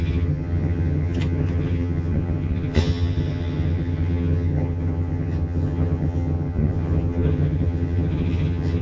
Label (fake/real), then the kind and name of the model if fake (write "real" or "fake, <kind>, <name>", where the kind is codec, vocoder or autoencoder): fake, vocoder, HiFi-GAN